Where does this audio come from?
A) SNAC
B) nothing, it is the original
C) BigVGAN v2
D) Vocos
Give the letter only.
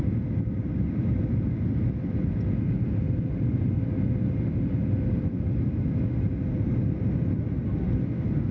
B